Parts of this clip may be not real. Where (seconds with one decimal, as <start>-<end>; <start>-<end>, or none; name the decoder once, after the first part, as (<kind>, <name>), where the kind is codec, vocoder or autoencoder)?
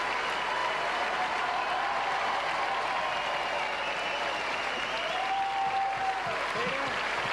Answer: none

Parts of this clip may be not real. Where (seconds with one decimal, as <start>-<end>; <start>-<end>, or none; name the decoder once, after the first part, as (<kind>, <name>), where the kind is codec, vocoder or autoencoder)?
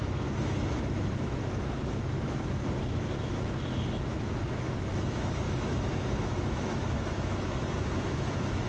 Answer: 0.0-8.7 (autoencoder, DAC-VAE)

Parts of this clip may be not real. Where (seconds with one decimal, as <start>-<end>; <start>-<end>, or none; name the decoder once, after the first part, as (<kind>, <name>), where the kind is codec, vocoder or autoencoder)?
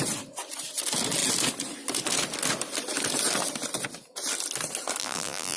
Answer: 5.0-5.6 (vocoder, BigVGAN v2)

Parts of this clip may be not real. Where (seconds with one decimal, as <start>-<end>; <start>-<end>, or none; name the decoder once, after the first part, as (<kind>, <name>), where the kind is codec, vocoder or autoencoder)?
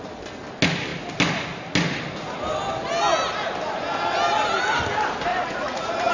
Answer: 5.3-6.1 (vocoder, Vocos)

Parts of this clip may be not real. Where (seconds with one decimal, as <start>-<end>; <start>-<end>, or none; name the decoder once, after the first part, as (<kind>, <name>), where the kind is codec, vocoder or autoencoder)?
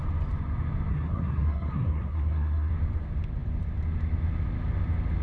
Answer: 0.9-2.7 (codec, SNAC)